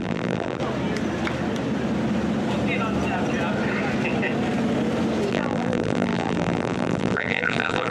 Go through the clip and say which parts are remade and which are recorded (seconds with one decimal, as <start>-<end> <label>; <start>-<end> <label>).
0.0-0.6 remade; 0.6-5.3 recorded; 5.3-7.9 remade